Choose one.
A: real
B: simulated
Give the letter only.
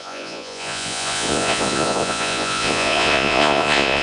B